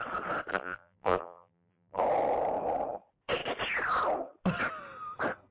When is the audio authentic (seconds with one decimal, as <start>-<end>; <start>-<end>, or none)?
0.0-0.5; 2.0-5.5